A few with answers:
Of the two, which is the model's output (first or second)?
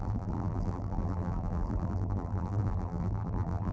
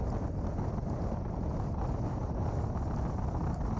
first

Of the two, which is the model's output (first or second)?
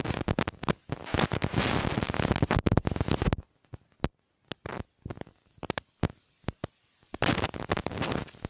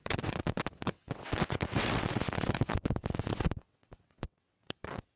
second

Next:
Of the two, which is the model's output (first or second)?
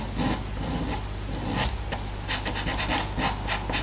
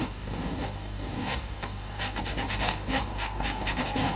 second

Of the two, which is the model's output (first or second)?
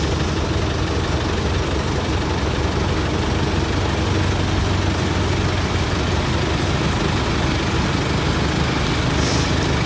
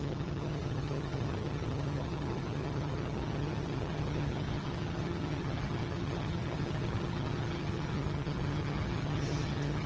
second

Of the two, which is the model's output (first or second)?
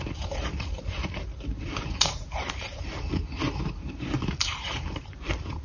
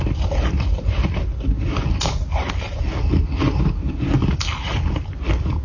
first